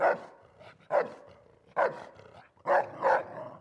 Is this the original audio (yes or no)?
yes